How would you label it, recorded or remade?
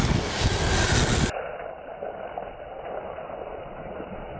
recorded